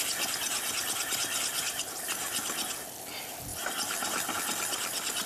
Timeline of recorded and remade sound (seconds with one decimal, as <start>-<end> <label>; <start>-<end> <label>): 0.0-5.3 recorded